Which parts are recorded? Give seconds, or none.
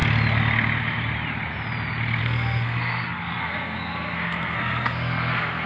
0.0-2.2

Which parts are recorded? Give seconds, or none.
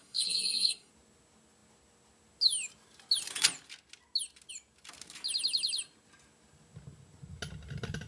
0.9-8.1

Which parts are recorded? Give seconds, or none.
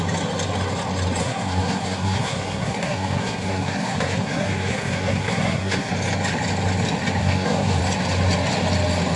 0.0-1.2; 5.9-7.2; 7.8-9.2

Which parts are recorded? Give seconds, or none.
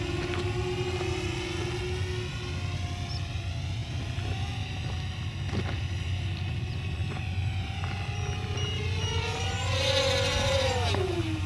0.0-11.5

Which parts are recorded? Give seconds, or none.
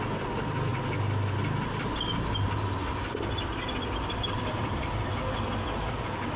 0.0-6.4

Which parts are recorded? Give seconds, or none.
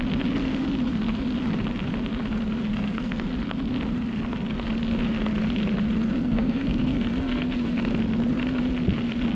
0.0-2.7; 3.3-6.2; 8.0-9.3